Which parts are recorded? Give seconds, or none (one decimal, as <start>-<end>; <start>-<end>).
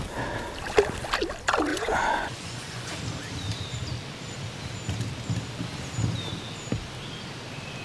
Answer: 0.0-1.7; 2.9-7.8